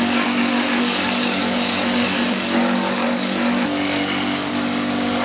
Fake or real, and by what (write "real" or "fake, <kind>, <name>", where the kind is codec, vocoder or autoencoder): fake, codec, DAC